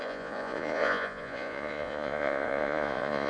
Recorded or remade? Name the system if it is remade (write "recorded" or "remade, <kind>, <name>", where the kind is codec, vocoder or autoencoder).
remade, vocoder, Vocos